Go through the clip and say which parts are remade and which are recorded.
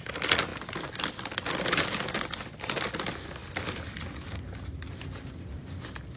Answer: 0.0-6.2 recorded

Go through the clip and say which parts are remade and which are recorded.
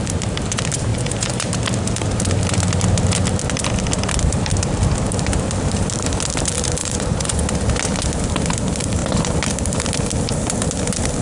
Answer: 0.0-0.9 recorded; 0.9-1.5 remade; 1.5-6.8 recorded; 6.8-7.4 remade; 7.4-11.2 recorded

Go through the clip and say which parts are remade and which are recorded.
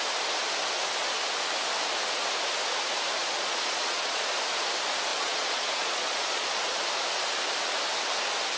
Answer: 0.0-3.2 recorded; 3.2-4.2 remade; 4.2-5.1 recorded; 5.1-6.6 remade; 6.6-8.6 recorded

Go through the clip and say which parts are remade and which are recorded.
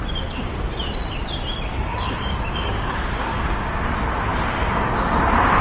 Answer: 0.0-1.7 recorded; 1.7-3.8 remade; 3.8-5.6 recorded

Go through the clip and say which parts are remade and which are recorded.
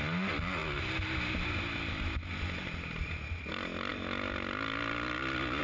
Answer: 0.0-5.6 recorded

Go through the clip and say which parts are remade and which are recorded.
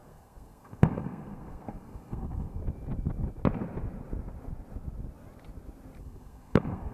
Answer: 0.0-2.6 remade; 2.6-6.0 recorded; 6.0-6.9 remade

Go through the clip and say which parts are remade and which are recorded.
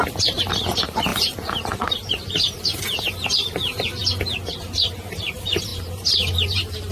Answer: 0.0-4.0 remade; 4.0-5.2 recorded; 5.2-6.9 remade